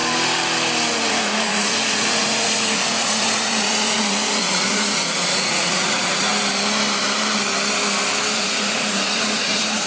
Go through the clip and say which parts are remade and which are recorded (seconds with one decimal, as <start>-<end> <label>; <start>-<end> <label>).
0.0-0.9 recorded; 0.9-6.3 remade; 6.3-8.4 recorded; 8.4-9.9 remade